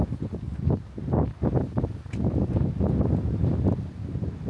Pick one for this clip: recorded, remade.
recorded